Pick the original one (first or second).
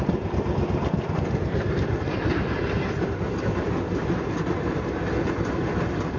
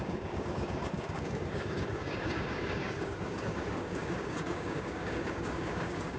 first